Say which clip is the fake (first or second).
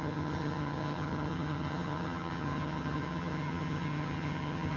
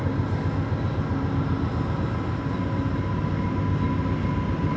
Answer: first